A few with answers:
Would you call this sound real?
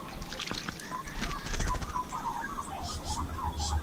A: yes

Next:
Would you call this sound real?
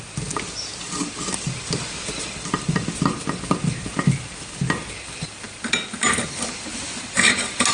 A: yes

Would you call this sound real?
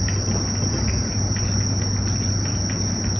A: yes